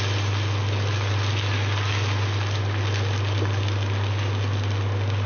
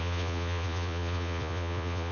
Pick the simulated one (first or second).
second